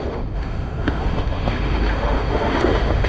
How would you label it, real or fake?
fake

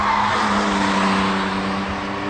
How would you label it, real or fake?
real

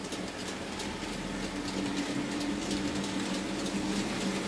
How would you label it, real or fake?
real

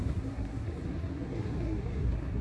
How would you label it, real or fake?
fake